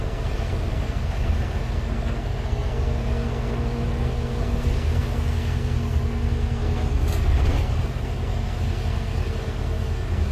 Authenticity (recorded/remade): remade